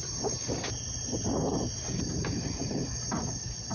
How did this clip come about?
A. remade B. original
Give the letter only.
B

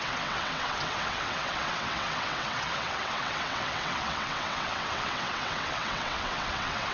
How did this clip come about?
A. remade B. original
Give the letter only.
A